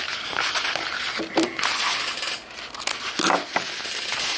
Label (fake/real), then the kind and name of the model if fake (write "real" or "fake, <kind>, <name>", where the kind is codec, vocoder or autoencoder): real